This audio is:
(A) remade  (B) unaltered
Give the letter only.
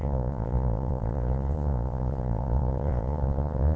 A